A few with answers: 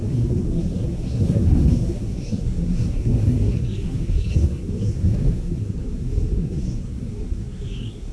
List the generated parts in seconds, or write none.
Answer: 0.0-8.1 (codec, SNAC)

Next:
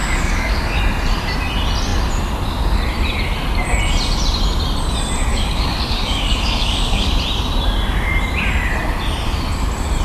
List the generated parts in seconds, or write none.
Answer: 0.0-0.8 (codec, DAC); 5.3-7.1

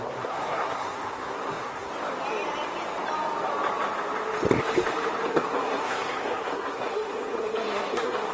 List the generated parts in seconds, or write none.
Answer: 0.0-1.9 (codec, SNAC); 5.3-8.3